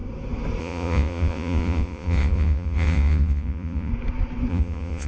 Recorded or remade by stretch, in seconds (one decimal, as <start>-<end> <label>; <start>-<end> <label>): 0.0-0.6 recorded; 0.6-3.9 remade; 3.9-4.5 recorded; 4.5-5.1 remade